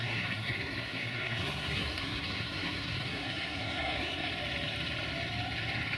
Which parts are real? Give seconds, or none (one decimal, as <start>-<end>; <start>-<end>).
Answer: 4.3-6.0